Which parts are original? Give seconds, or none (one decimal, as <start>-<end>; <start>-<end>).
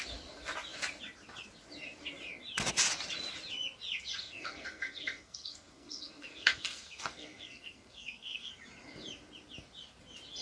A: 0.0-4.2; 8.5-10.4